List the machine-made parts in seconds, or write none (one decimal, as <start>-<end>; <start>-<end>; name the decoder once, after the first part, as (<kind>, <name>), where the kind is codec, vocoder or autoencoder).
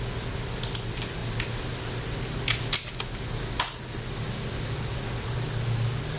none